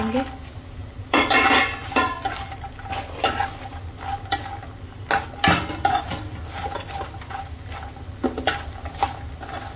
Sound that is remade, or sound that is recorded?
recorded